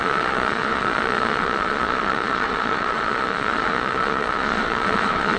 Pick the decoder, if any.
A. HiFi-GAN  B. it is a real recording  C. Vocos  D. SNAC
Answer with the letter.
C